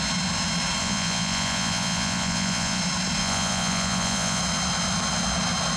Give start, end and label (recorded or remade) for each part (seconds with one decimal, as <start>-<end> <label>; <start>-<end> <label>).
0.0-0.8 recorded; 0.8-2.8 remade; 2.8-3.2 recorded; 3.2-4.4 remade; 4.4-5.8 recorded